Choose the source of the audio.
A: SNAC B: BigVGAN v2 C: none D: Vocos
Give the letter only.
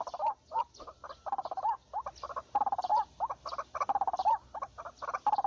C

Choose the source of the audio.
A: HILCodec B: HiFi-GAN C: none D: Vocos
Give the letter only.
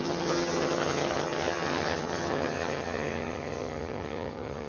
B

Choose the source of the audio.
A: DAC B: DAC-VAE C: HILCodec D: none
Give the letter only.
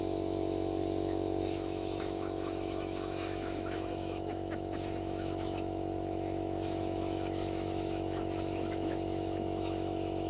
B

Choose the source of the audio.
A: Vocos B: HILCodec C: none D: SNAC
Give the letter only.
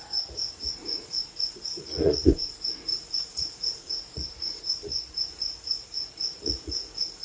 A